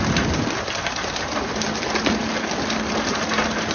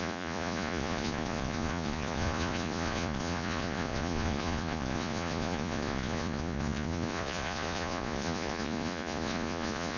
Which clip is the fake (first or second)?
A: second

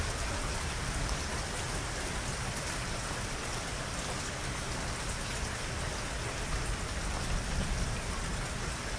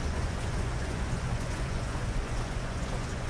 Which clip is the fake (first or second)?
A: second